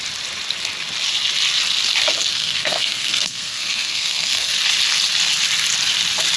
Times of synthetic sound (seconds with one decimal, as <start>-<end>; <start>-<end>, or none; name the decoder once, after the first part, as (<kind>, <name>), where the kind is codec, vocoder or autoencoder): 2.3-4.5 (codec, SNAC)